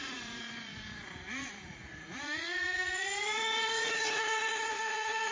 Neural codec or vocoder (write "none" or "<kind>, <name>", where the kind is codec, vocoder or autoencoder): vocoder, Vocos